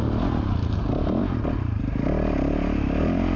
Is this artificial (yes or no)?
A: no